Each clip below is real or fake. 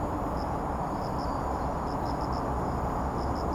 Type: real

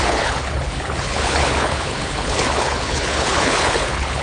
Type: fake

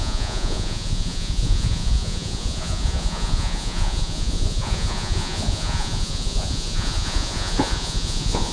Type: fake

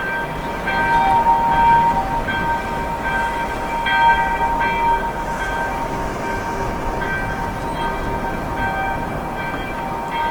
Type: real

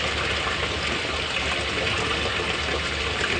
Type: fake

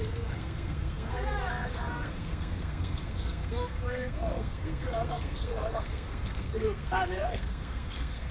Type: fake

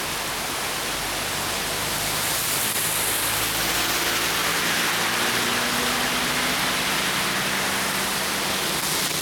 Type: real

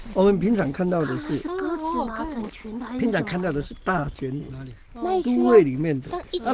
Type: real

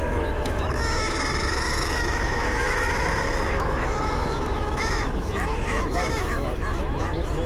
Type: fake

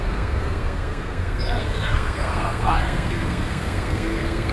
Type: fake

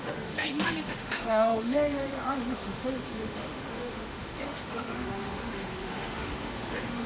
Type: fake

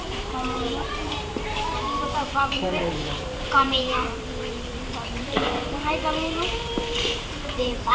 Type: fake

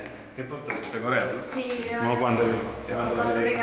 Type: fake